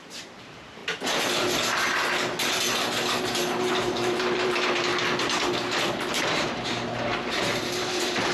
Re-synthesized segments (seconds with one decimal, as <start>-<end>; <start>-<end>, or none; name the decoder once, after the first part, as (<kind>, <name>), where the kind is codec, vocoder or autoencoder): 0.0-0.8 (vocoder, BigVGAN v2); 3.2-4.9; 6.1-8.3